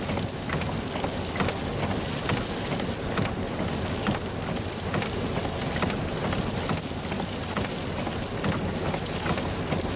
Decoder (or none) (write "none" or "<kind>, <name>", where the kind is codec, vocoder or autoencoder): none